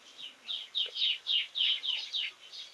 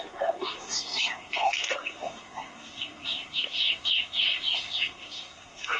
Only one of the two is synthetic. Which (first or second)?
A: second